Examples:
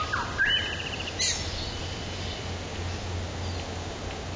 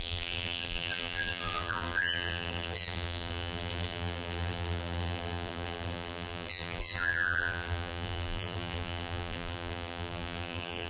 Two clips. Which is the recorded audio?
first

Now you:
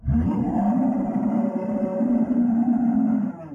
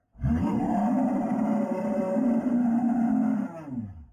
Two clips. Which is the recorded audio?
second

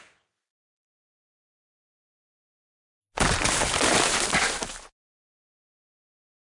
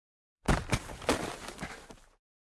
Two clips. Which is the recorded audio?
first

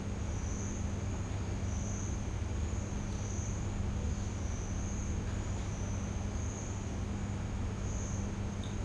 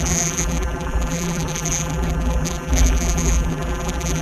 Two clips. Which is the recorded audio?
first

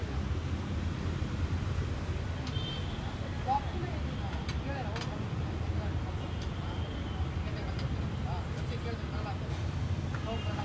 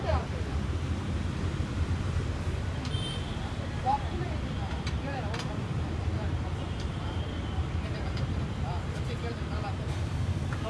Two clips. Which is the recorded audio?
first